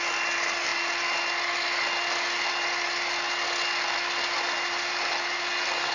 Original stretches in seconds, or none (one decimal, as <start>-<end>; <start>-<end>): 0.0-5.9